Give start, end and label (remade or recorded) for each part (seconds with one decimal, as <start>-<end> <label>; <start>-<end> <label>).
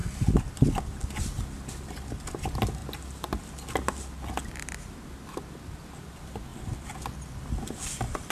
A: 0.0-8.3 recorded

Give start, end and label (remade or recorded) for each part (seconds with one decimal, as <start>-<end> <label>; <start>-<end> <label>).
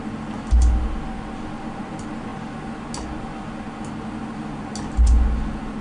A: 0.0-5.8 recorded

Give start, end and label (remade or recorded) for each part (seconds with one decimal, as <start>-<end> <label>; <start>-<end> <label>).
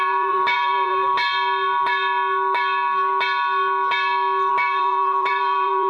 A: 0.0-1.1 remade; 1.1-4.5 recorded; 4.5-5.9 remade